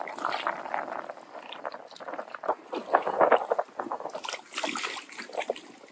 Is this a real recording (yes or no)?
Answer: yes